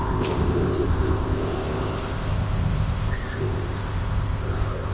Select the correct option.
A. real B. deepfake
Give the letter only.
B